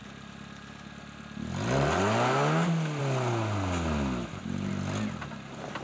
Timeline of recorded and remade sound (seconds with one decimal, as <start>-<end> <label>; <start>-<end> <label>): 0.0-4.2 recorded; 4.2-4.7 remade; 4.7-5.8 recorded